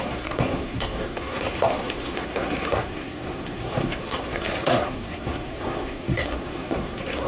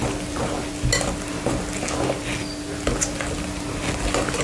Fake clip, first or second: first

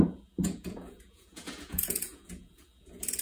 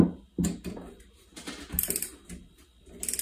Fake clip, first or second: first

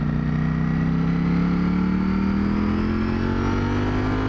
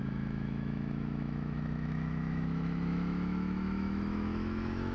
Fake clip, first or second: second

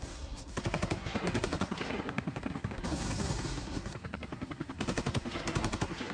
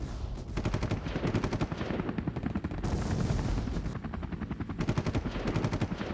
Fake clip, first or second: first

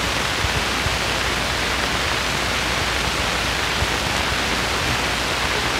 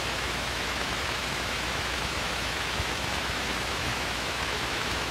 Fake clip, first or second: second